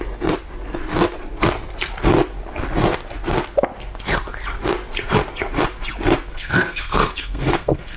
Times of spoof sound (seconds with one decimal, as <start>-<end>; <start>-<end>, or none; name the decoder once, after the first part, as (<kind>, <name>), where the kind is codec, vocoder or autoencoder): 6.3-8.0 (codec, SNAC)